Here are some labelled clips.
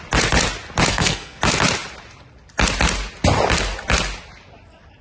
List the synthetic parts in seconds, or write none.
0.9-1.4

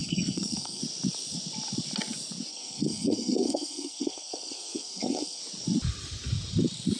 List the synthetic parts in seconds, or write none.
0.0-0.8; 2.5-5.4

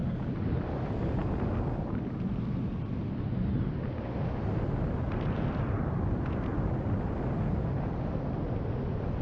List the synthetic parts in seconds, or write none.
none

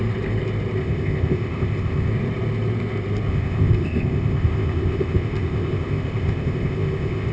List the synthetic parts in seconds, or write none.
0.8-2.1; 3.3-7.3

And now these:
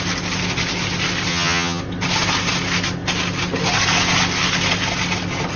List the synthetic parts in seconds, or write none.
1.3-1.8

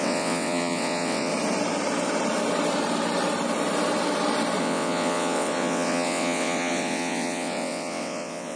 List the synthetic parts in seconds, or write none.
0.0-1.3; 4.6-8.6